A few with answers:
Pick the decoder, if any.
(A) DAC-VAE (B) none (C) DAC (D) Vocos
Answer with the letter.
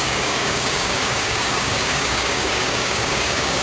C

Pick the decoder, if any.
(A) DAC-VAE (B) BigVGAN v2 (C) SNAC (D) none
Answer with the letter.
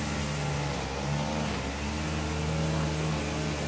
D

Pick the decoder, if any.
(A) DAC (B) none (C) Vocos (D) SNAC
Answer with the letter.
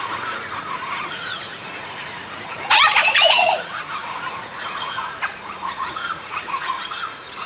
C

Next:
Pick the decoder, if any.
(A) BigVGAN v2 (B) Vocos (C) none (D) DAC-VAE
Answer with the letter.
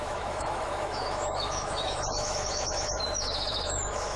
D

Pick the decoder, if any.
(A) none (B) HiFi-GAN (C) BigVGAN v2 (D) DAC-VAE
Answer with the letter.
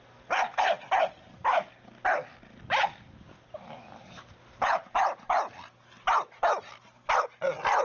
A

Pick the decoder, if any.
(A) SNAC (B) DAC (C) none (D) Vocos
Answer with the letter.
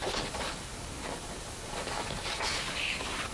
B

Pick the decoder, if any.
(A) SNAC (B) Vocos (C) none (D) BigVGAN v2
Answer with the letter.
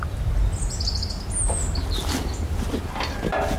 C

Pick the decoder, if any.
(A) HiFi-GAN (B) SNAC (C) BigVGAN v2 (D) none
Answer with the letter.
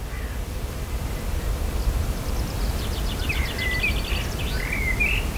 C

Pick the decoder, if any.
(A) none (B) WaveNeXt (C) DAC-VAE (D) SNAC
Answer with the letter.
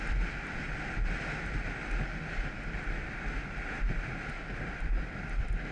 A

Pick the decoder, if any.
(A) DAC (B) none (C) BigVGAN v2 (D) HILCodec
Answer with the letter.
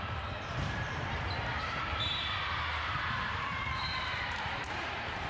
C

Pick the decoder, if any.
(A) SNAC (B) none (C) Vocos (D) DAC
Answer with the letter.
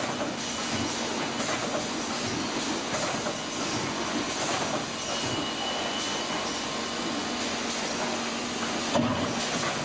C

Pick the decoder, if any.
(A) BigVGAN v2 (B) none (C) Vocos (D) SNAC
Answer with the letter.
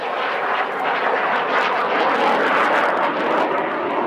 B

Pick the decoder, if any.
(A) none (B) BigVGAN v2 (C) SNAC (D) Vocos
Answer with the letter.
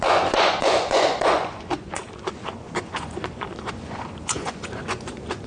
D